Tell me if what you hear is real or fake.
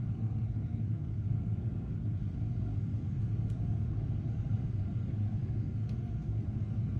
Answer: fake